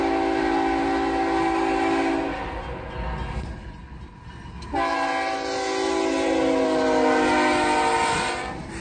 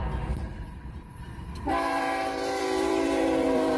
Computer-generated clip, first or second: second